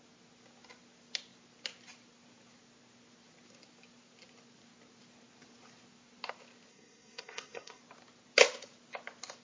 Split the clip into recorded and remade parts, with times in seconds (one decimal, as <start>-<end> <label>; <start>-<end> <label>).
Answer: 0.0-6.7 recorded; 6.7-7.8 remade; 7.8-9.4 recorded